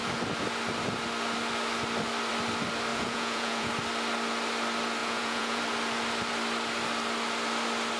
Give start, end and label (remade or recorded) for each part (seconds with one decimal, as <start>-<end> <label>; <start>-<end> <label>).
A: 0.0-2.9 recorded; 2.9-3.7 remade; 3.7-5.0 recorded; 5.0-5.6 remade; 5.6-8.0 recorded